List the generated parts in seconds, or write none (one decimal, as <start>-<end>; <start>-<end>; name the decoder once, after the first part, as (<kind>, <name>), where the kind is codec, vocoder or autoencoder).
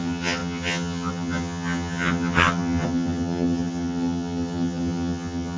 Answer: 0.0-5.6 (vocoder, HiFi-GAN)